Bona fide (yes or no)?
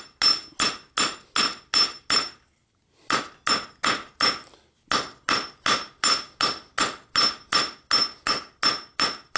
yes